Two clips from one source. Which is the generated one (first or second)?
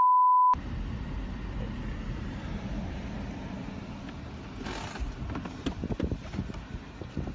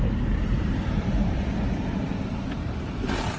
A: second